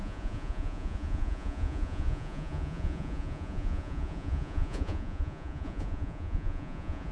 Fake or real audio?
fake